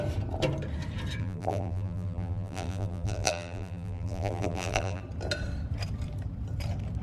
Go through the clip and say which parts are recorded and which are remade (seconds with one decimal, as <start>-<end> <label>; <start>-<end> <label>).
0.0-1.2 recorded; 1.2-5.0 remade; 5.0-7.0 recorded